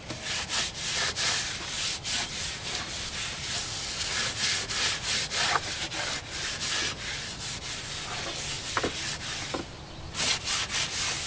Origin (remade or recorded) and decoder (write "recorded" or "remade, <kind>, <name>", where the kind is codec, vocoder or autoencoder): recorded